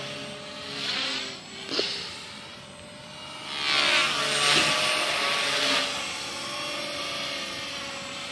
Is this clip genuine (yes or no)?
yes